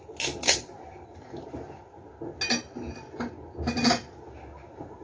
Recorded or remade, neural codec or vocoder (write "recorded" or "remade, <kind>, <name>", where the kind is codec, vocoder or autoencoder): recorded